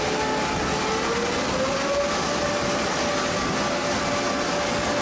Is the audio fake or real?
real